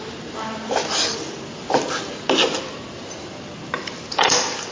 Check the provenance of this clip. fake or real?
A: real